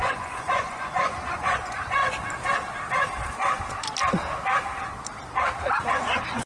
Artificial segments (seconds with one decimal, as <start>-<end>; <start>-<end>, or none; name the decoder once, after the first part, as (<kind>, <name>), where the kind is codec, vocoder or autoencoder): 0.0-2.0 (vocoder, Vocos); 5.9-6.5

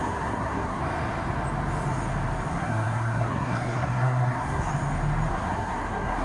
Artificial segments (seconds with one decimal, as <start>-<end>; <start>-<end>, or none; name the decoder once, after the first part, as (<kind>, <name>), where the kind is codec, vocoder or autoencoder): 0.0-0.8 (codec, SNAC); 2.5-4.7; 5.3-6.2

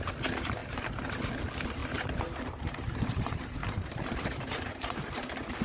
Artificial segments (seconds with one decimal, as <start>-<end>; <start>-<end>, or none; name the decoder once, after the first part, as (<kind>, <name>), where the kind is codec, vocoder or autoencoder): 1.8-5.6 (vocoder, BigVGAN v2)

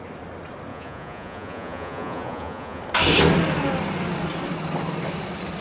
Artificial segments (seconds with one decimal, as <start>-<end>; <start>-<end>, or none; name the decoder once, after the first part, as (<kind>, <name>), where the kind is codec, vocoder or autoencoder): 0.7-2.8 (vocoder, Vocos)